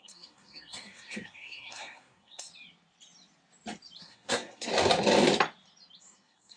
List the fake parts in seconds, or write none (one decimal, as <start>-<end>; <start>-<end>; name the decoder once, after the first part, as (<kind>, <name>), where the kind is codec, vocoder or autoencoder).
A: 0.0-2.5 (codec, SNAC); 4.0-4.7; 6.0-6.6